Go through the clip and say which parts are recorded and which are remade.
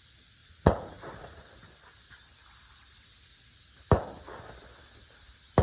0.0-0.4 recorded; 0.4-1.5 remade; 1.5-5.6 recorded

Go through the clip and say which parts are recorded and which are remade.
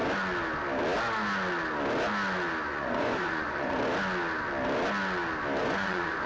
0.0-2.7 recorded; 2.7-3.8 remade; 3.8-5.6 recorded; 5.6-6.3 remade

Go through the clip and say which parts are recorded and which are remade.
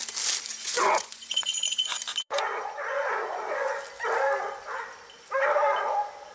0.0-0.5 recorded; 0.5-3.8 remade; 3.8-6.3 recorded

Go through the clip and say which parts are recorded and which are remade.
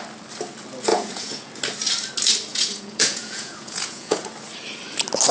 0.0-0.9 recorded; 0.9-1.5 remade; 1.5-2.5 recorded; 2.5-4.2 remade; 4.2-5.3 recorded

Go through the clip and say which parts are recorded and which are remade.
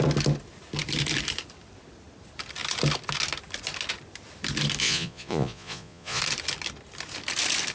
0.0-4.8 recorded; 4.8-6.2 remade; 6.2-7.7 recorded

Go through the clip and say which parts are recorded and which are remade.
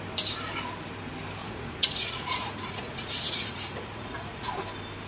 0.0-1.4 recorded; 1.4-4.5 remade; 4.5-5.1 recorded